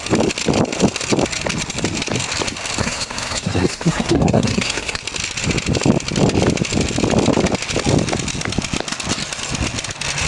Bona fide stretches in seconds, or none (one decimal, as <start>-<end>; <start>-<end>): 0.0-2.8; 5.0-10.3